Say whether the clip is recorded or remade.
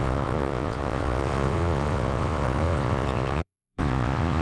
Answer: remade